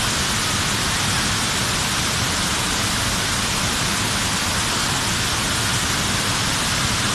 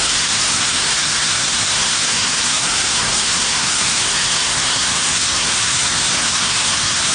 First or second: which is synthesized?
second